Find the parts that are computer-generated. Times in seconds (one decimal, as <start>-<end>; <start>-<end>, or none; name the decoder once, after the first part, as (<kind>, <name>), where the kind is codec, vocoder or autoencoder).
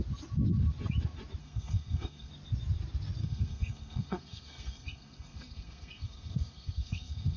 1.4-2.3 (codec, SNAC); 3.2-7.4